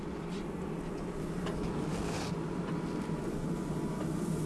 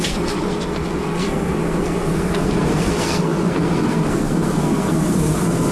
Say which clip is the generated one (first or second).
second